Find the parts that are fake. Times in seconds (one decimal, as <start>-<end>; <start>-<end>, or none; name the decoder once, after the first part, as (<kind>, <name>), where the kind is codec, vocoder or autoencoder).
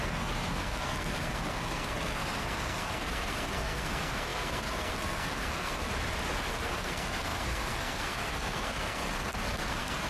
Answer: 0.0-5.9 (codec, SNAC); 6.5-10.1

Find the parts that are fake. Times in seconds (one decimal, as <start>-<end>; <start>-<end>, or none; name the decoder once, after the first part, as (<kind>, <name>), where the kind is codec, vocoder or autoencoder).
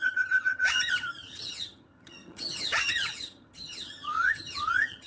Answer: 0.0-5.1 (vocoder, HiFi-GAN)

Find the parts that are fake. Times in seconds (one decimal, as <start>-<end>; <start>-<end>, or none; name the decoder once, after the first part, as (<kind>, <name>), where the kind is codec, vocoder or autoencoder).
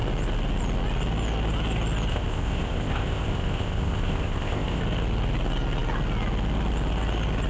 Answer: 2.1-4.8 (codec, ZipCodec)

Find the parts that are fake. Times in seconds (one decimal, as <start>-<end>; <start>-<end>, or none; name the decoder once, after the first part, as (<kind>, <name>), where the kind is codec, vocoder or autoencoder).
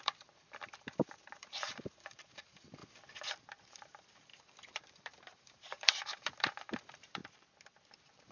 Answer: 0.0-2.8 (vocoder, BigVGAN v2); 3.3-7.2; 7.9-8.3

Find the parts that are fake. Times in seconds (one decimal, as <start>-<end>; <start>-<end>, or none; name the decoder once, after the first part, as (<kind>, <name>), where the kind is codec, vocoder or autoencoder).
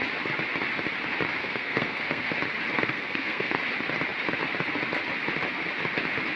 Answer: 1.4-2.3 (codec, SNAC); 2.8-3.6